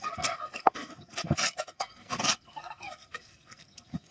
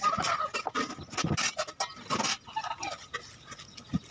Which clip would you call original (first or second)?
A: second